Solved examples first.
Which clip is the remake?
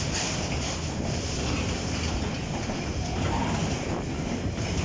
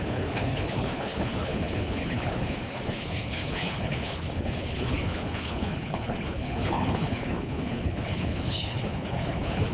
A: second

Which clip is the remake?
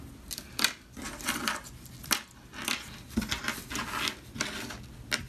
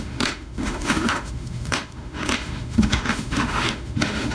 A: second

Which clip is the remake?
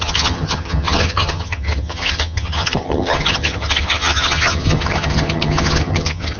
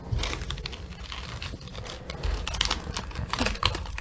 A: first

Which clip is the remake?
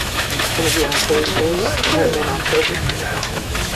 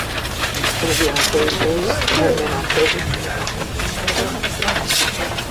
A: first